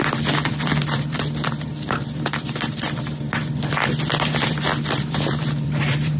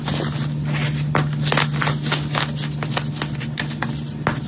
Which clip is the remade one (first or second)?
first